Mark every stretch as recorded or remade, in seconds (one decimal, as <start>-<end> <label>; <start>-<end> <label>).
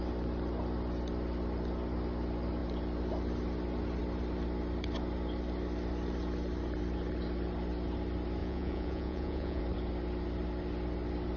0.0-8.4 recorded; 8.4-9.6 remade; 9.6-11.4 recorded